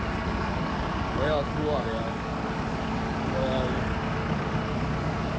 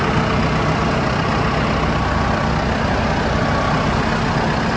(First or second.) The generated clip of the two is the first